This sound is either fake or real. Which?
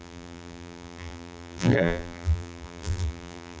fake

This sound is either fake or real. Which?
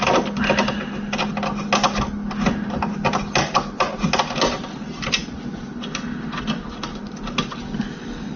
real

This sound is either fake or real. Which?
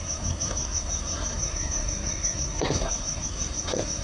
fake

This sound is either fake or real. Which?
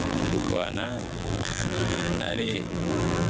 fake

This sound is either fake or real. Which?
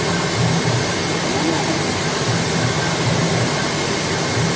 real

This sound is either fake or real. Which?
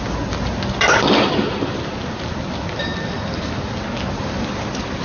real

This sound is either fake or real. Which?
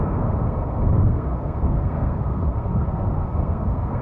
fake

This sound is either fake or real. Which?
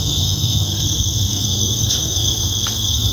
fake